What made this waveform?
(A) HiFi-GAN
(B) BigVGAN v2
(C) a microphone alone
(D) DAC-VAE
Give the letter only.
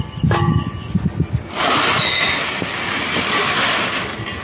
C